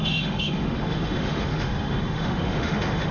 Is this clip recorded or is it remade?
remade